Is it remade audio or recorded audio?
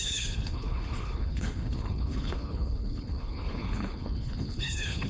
remade